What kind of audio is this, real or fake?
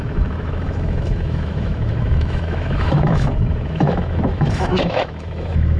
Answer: fake